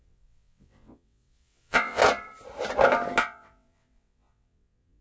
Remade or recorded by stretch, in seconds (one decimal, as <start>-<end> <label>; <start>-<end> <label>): 0.0-2.0 remade; 2.0-3.2 recorded; 3.2-5.0 remade